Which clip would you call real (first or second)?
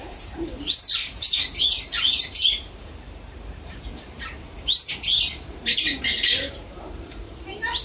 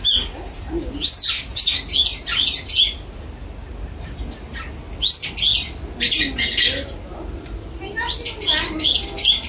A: second